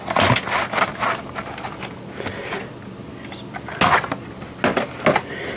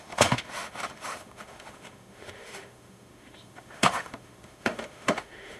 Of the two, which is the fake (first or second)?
second